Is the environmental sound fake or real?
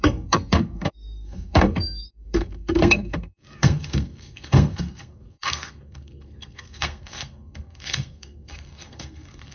fake